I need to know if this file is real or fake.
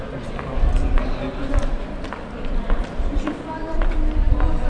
real